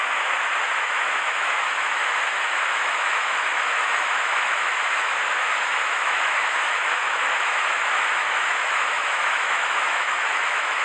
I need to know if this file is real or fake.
fake